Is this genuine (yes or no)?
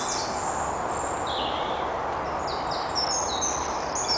yes